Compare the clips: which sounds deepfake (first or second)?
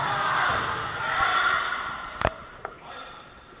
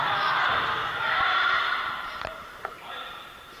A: second